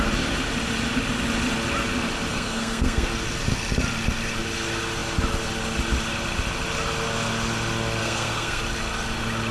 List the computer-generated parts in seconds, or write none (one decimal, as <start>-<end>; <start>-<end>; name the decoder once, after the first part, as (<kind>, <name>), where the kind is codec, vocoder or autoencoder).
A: 2.3-3.1 (codec, SNAC); 8.0-8.6